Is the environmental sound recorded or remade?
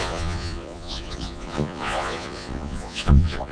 remade